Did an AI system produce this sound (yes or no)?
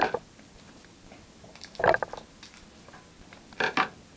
no